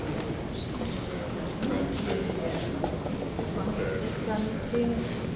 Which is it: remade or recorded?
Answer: recorded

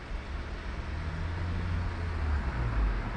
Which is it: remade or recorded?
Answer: recorded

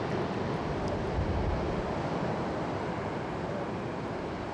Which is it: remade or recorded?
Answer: recorded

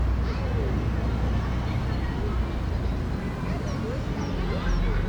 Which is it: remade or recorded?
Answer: recorded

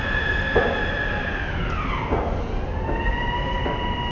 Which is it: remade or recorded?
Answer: recorded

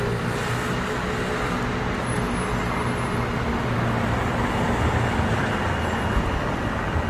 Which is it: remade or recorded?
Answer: recorded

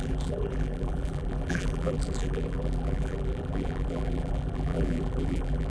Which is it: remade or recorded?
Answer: remade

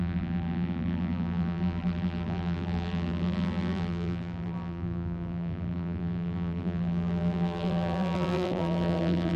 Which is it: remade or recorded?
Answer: remade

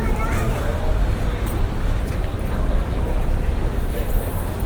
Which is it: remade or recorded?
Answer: recorded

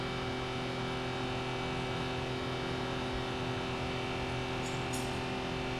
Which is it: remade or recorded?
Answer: recorded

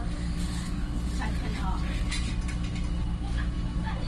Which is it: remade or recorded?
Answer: recorded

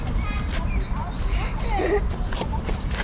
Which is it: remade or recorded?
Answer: remade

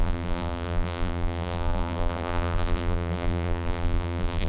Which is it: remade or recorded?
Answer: remade